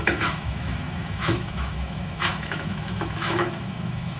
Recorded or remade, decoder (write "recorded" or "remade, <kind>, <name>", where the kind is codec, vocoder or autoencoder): remade, autoencoder, DAC-VAE